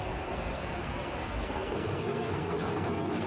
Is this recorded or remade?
remade